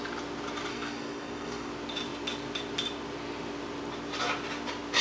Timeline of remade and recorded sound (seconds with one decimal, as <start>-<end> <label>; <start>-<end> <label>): 0.0-0.7 recorded; 0.7-1.7 remade; 1.7-5.0 recorded